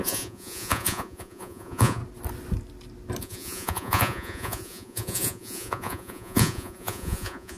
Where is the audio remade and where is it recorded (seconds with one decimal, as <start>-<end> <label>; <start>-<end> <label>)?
0.0-2.0 remade; 2.0-3.2 recorded; 3.2-7.6 remade